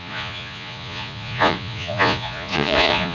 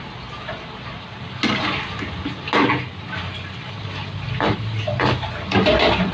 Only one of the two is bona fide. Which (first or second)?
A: second